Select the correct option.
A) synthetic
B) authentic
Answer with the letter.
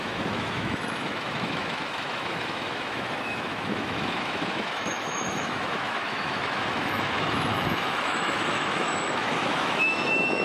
A